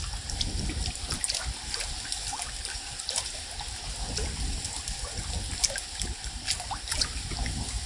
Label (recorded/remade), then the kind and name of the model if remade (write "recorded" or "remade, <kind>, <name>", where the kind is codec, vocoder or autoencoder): recorded